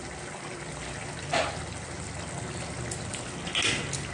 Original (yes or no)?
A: yes